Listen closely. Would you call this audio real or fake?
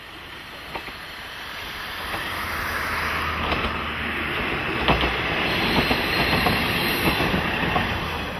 real